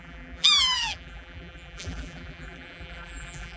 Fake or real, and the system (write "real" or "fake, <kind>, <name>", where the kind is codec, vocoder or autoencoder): fake, vocoder, BigVGAN v2